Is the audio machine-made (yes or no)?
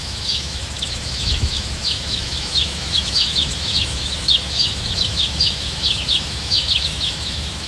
yes